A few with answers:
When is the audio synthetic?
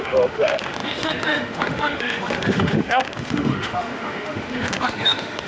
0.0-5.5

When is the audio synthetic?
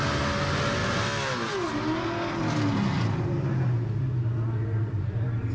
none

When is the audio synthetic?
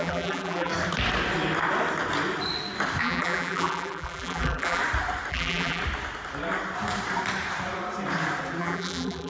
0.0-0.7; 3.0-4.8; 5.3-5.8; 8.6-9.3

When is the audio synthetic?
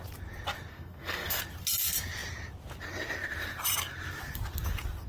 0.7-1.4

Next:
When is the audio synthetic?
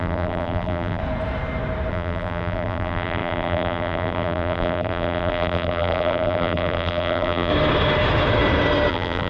0.0-1.0; 1.9-7.5; 8.9-9.3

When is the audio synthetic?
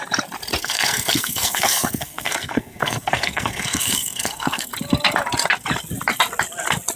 0.6-4.7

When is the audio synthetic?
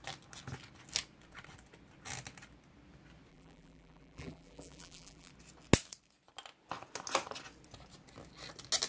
3.3-5.3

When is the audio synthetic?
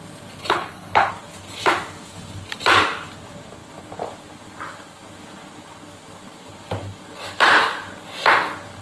0.4-1.1